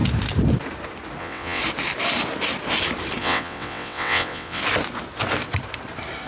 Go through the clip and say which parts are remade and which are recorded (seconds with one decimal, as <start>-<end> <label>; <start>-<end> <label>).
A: 0.0-1.2 recorded; 1.2-1.6 remade; 1.6-3.2 recorded; 3.2-4.6 remade; 4.6-6.3 recorded